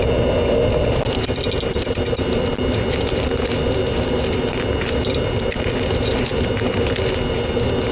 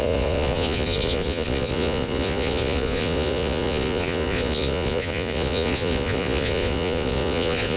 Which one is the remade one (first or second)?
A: second